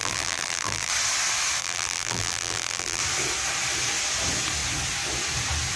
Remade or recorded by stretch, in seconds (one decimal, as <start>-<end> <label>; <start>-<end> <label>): 0.0-0.9 remade; 0.9-1.6 recorded; 1.6-3.0 remade; 3.0-5.8 recorded